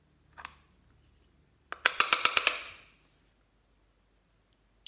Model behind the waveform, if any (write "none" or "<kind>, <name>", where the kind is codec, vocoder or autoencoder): none